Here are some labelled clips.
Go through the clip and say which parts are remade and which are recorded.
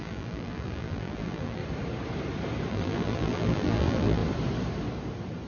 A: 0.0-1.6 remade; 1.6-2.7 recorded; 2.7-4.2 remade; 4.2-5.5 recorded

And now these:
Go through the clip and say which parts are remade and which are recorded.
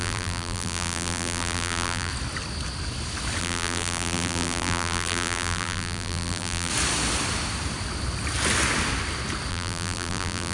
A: 0.0-2.1 remade; 2.1-3.4 recorded; 3.4-6.7 remade; 6.7-9.5 recorded; 9.5-10.5 remade